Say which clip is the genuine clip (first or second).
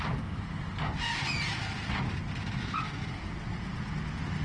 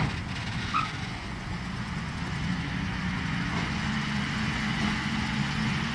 first